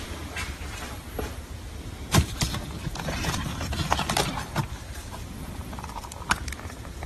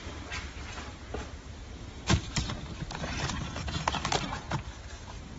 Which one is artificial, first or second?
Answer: first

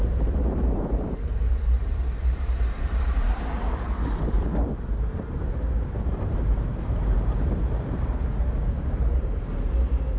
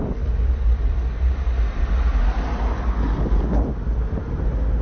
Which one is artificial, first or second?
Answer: first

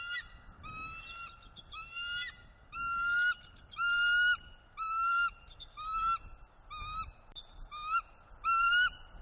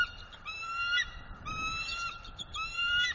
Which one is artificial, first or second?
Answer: second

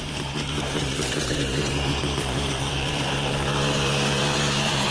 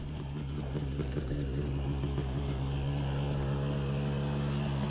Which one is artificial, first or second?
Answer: first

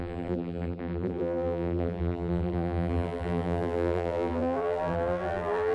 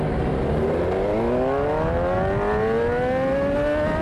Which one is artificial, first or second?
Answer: first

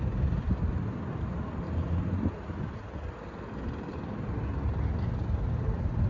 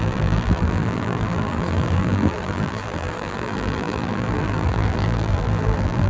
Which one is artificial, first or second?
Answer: second